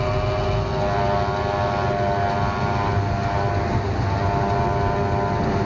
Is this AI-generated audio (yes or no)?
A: no